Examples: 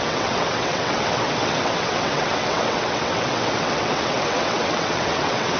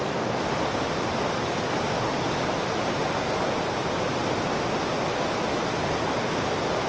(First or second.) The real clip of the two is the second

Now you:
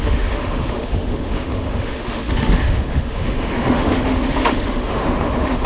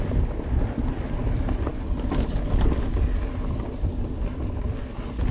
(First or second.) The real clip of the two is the second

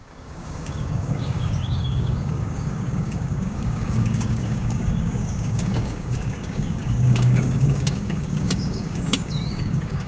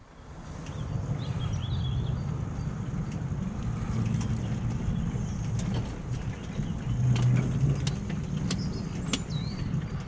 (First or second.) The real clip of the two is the second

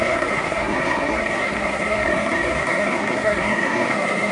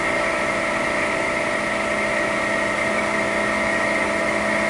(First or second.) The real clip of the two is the second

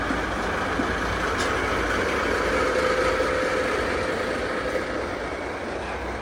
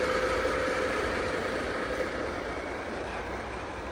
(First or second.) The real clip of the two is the first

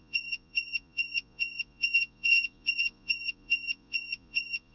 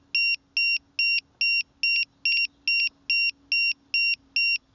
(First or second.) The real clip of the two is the second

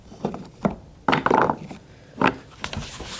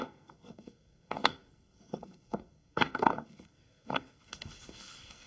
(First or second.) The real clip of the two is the first